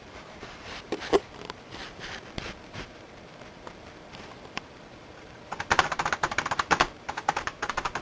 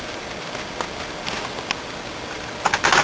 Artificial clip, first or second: first